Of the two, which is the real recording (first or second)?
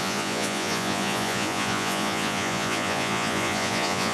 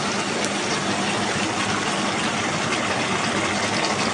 second